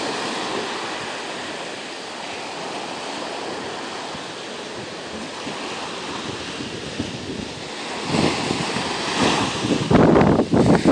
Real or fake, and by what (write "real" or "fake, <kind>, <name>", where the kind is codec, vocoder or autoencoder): real